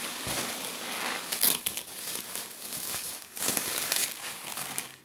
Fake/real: fake